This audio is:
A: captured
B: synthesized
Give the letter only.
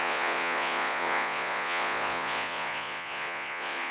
B